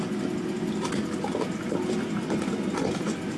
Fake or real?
real